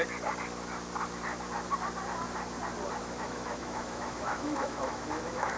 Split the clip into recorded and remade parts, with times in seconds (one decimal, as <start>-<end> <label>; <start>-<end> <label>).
0.0-3.0 recorded; 3.0-5.6 remade